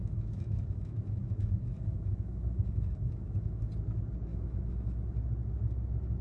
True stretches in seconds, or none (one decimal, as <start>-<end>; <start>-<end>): 3.7-4.3; 5.1-6.2